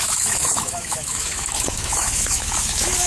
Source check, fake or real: fake